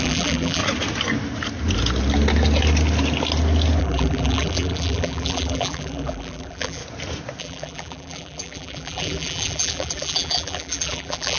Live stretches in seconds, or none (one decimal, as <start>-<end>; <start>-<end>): 0.6-3.8; 6.8-7.4